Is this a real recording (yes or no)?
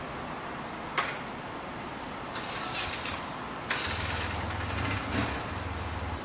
yes